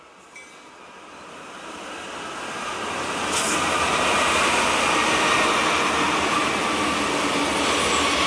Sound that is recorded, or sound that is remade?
recorded